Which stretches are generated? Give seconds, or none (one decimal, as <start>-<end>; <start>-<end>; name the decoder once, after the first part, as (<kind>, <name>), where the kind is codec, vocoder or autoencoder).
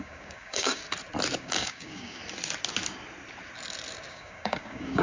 0.0-0.8 (codec, DAC); 1.4-2.2; 4.1-5.0